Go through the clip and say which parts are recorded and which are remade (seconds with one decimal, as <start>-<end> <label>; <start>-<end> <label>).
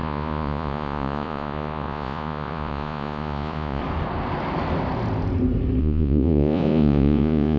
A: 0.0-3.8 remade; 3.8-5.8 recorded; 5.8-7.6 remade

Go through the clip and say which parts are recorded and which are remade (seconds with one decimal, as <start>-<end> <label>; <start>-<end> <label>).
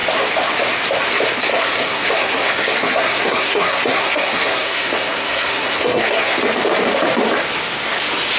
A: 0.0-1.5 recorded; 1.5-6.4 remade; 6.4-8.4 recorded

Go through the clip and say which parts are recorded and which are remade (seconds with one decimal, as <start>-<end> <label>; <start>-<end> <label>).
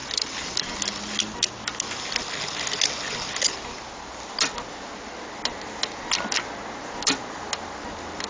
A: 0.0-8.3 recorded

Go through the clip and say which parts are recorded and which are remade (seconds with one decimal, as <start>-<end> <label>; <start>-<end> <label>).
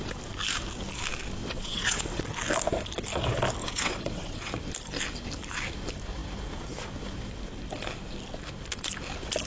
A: 0.0-1.4 recorded; 1.4-2.2 remade; 2.2-3.6 recorded; 3.6-4.5 remade; 4.5-9.5 recorded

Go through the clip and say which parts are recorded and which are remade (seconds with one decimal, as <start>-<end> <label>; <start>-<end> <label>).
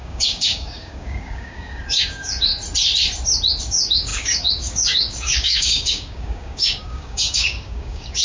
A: 0.0-2.5 remade; 2.5-3.6 recorded; 3.6-8.2 remade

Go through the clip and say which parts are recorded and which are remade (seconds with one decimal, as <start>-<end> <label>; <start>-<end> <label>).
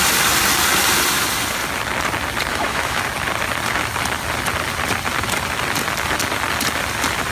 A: 0.0-2.5 recorded; 2.5-3.0 remade; 3.0-7.3 recorded